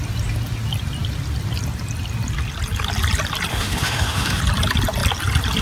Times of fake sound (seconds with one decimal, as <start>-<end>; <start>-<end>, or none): 3.5-4.4